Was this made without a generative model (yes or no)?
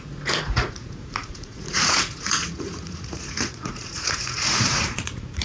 no